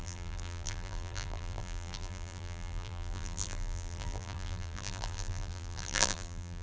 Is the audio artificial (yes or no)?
yes